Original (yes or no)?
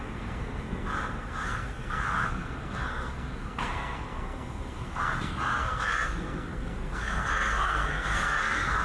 no